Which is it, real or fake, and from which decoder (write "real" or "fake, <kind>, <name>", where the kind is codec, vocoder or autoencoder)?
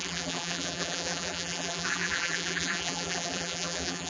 fake, vocoder, BigVGAN v2